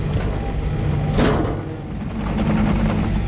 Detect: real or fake real